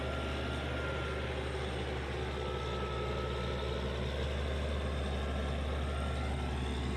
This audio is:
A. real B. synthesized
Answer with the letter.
A